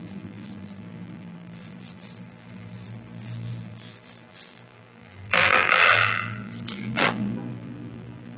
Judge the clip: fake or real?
fake